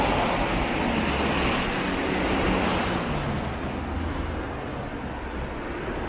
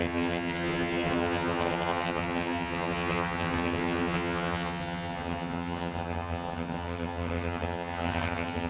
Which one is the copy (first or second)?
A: second